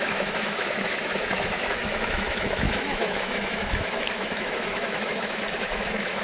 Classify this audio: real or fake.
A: fake